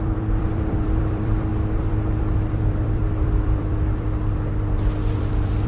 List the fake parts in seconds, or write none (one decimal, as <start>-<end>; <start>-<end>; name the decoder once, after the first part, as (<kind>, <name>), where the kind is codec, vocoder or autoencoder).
0.0-5.7 (vocoder, BigVGAN v2)